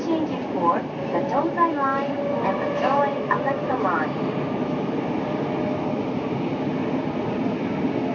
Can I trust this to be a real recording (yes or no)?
yes